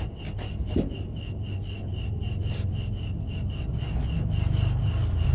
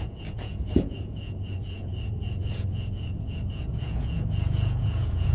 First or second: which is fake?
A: second